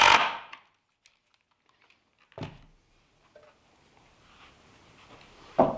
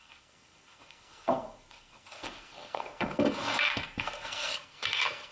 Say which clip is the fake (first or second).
second